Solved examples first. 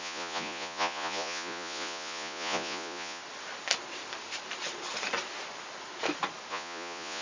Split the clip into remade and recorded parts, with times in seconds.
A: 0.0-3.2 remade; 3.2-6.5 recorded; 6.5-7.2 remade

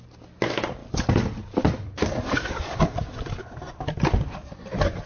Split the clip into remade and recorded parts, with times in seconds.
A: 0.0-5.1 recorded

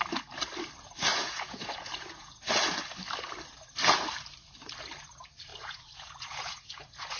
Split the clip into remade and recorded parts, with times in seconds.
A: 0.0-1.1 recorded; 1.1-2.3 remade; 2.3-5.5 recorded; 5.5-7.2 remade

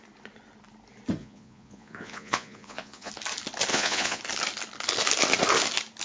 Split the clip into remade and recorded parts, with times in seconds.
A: 0.0-1.2 recorded; 1.2-3.1 remade; 3.1-3.7 recorded; 3.7-4.2 remade; 4.2-6.0 recorded

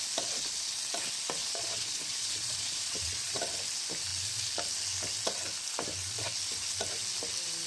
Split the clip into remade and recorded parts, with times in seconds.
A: 0.0-1.4 recorded; 1.4-3.4 remade; 3.4-7.7 recorded